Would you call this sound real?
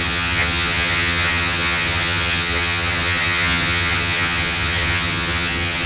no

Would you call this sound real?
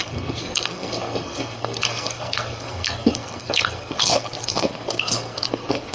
no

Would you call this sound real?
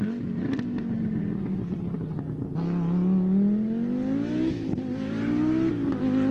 yes